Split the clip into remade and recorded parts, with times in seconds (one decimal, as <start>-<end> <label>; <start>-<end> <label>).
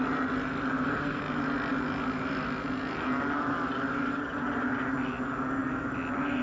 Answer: 0.0-0.7 recorded; 0.7-1.2 remade; 1.2-6.4 recorded